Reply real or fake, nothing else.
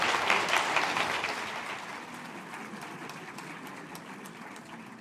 real